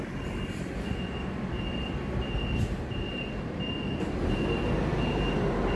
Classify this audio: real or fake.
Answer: real